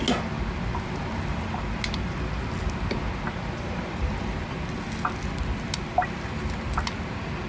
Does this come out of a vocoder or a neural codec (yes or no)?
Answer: no